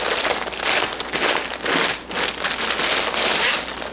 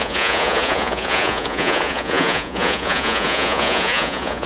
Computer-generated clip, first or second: second